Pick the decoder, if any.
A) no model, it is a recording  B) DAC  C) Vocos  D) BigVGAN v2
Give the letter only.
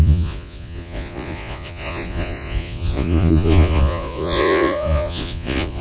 C